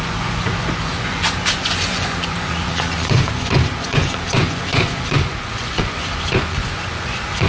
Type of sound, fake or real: fake